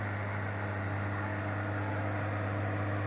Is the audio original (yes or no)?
yes